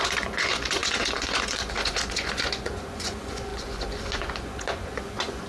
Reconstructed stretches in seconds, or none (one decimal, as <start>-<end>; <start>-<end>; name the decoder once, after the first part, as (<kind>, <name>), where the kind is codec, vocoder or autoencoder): 0.0-5.5 (vocoder, Vocos)